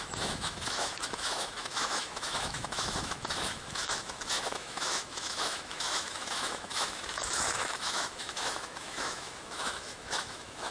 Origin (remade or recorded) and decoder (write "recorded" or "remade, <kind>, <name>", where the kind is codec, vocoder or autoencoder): remade, autoencoder, DAC-VAE